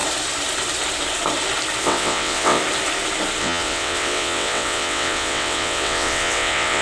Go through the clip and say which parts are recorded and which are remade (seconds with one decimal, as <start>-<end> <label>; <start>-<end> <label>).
0.0-1.8 recorded; 1.8-2.6 remade; 2.6-3.4 recorded; 3.4-6.8 remade